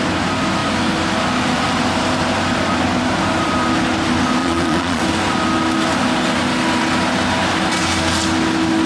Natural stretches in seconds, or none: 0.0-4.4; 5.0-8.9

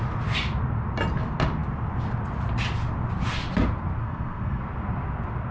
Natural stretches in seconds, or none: 0.0-4.0; 4.6-5.5

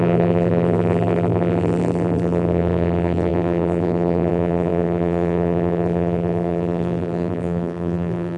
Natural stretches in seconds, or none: none